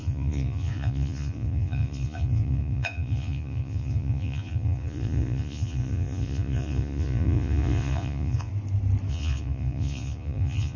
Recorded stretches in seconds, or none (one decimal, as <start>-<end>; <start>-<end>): 8.5-9.1